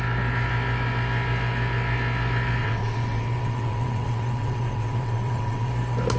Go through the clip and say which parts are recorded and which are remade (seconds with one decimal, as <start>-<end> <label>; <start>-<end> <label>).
0.0-2.6 recorded; 2.6-5.7 remade; 5.7-6.2 recorded